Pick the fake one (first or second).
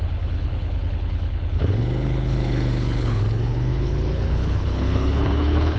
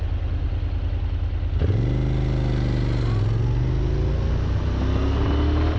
first